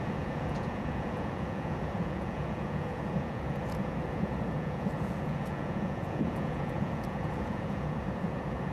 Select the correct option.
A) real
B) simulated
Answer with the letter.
B